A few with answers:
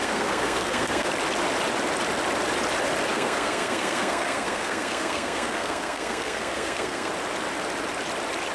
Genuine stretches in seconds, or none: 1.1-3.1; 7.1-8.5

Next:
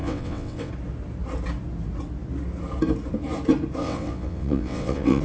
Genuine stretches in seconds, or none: 0.7-3.8

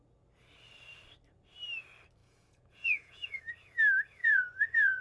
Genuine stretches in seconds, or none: 0.0-2.2; 3.4-4.2

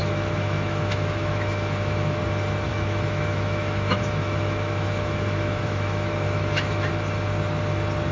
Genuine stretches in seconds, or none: 2.2-2.7; 6.9-8.1

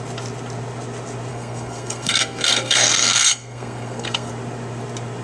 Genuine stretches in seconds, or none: 0.0-1.3; 4.3-5.2